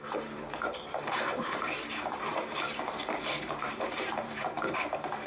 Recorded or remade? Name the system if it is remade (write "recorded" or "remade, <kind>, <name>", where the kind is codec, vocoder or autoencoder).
remade, vocoder, BigVGAN v2